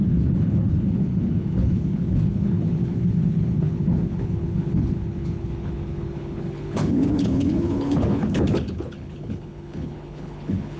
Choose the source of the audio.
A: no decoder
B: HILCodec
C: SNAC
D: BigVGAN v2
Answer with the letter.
B